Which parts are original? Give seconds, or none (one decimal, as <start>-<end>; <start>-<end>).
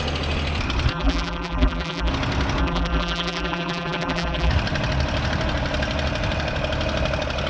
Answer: 0.0-0.9; 2.1-2.6; 4.5-7.5